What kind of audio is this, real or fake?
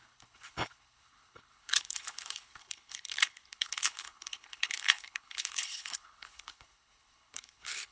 fake